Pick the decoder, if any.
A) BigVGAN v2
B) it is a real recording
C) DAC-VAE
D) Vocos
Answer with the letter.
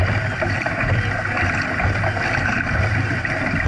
B